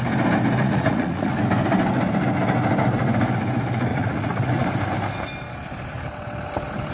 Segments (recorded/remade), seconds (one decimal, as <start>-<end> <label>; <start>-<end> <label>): 0.0-0.6 recorded; 0.6-1.3 remade; 1.3-3.9 recorded; 3.9-4.5 remade; 4.5-6.9 recorded